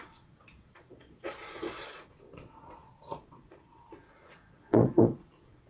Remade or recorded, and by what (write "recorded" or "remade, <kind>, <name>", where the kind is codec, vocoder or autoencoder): remade, vocoder, Vocos